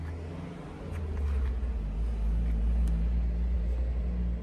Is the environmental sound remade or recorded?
recorded